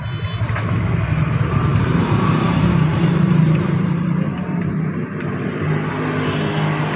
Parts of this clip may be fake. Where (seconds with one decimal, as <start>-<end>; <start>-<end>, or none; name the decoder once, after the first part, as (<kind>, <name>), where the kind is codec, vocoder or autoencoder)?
1.7-5.9 (vocoder, BigVGAN v2)